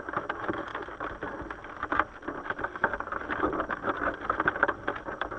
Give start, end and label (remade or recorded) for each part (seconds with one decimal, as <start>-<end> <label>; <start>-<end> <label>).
0.0-5.4 recorded